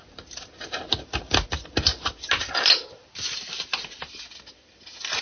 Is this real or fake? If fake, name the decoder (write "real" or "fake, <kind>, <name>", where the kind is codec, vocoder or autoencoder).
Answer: real